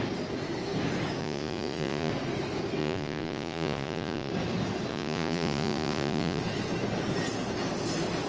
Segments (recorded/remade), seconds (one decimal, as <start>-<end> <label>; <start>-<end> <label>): 0.0-1.2 recorded; 1.2-2.1 remade; 2.1-2.8 recorded; 2.8-4.3 remade; 4.3-4.9 recorded; 4.9-6.4 remade; 6.4-8.3 recorded